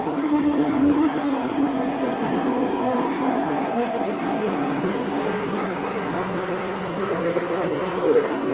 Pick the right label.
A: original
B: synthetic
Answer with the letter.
B